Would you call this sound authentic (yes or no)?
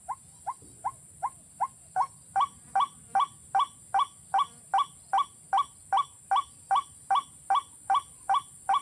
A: yes